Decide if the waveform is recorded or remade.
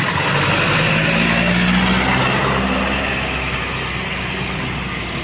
recorded